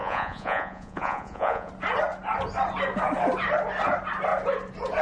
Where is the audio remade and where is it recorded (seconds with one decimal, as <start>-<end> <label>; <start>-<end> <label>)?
0.0-1.7 remade; 1.7-5.0 recorded